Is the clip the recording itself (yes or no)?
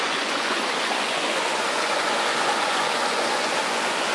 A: no